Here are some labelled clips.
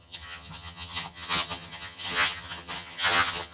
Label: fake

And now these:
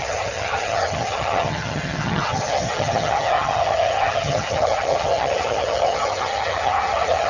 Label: fake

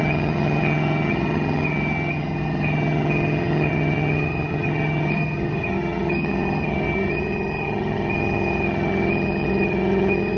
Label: fake